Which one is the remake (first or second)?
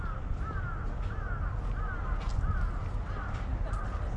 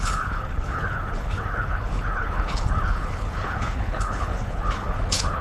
second